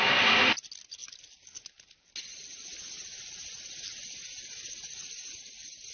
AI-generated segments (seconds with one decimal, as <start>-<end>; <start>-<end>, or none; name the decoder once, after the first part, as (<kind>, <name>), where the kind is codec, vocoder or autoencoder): none

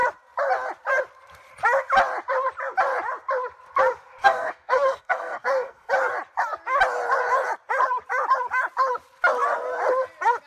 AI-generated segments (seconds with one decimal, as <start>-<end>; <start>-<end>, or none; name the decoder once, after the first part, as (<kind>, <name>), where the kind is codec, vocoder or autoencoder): 4.2-5.9 (codec, SNAC)

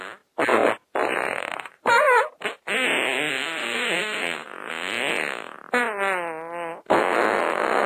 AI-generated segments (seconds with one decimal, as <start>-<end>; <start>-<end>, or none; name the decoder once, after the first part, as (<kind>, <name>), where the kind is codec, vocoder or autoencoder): 1.1-2.2 (vocoder, BigVGAN v2); 3.6-4.7

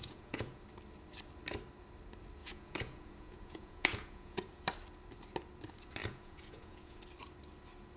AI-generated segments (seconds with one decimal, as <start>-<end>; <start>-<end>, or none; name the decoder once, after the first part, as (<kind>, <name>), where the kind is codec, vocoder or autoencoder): 0.0-0.6 (vocoder, Vocos); 2.4-4.5; 6.0-7.0

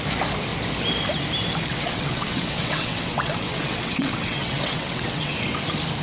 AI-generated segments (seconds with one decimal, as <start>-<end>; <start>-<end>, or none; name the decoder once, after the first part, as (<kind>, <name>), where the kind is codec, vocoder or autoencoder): 1.7-5.3 (vocoder, WaveNeXt)

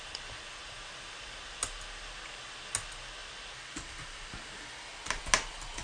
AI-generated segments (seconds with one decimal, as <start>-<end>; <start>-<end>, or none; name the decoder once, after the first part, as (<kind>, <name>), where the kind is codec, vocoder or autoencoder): none

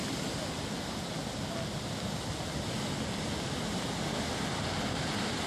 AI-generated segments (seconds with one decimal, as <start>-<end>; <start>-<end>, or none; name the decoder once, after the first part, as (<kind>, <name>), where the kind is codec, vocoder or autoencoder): none

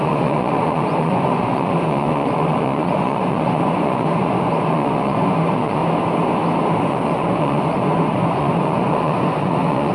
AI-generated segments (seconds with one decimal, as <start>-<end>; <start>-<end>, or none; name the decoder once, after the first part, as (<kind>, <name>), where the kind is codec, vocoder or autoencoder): 0.0-5.8 (vocoder, Vocos); 6.8-9.9